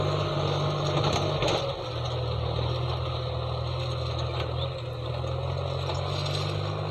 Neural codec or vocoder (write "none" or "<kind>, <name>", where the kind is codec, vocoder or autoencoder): none